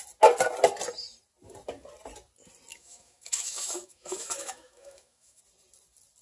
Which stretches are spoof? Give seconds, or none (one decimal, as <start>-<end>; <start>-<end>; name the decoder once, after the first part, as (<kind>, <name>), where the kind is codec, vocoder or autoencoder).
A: 2.7-5.4 (autoencoder, DAC-VAE)